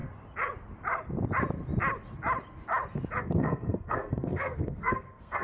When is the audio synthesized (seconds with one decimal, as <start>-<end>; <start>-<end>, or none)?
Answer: 3.2-5.4